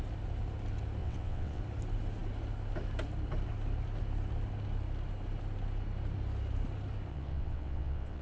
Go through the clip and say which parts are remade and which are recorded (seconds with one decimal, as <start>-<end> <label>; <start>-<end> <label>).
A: 0.0-1.0 recorded; 1.0-1.6 remade; 1.6-7.1 recorded; 7.1-8.2 remade

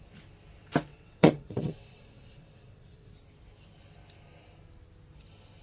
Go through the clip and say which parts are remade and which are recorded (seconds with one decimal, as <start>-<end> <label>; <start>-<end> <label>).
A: 0.0-0.9 recorded; 0.9-3.1 remade; 3.1-5.6 recorded

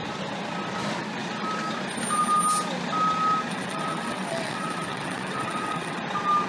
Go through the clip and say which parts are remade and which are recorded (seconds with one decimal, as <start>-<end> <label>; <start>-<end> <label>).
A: 0.0-3.5 recorded; 3.5-6.0 remade; 6.0-6.5 recorded

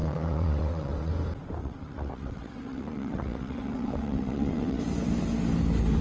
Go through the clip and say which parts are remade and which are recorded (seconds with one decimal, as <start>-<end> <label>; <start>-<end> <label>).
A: 0.0-1.1 remade; 1.1-1.6 recorded; 1.6-4.8 remade; 4.8-6.0 recorded

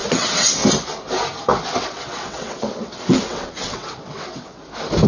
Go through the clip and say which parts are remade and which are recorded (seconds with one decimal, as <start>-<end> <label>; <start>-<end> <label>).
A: 0.0-0.5 remade; 0.5-1.5 recorded; 1.5-4.6 remade; 4.6-5.1 recorded

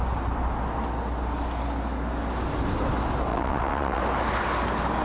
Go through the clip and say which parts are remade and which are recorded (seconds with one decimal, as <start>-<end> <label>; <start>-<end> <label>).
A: 0.0-3.3 recorded; 3.3-4.0 remade; 4.0-5.0 recorded

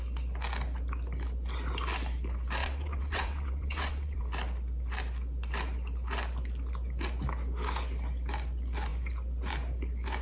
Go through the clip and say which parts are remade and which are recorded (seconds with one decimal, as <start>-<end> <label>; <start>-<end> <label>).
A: 0.0-2.6 recorded; 2.6-4.2 remade; 4.2-10.2 recorded

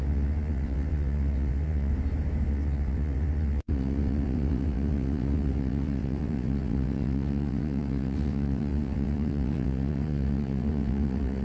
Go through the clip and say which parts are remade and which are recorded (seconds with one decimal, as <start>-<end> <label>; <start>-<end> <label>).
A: 0.0-1.9 remade; 1.9-2.5 recorded; 2.5-11.4 remade